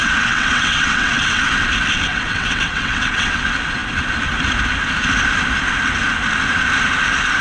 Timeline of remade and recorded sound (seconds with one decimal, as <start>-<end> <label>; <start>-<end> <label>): 0.0-1.4 remade; 1.4-2.1 recorded; 2.1-3.4 remade; 3.4-7.4 recorded